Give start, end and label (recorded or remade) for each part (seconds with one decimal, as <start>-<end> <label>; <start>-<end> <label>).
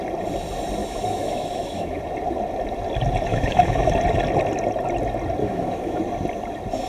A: 0.0-0.8 recorded; 0.8-2.0 remade; 2.0-3.3 recorded; 3.3-3.9 remade; 3.9-5.4 recorded; 5.4-6.0 remade; 6.0-6.9 recorded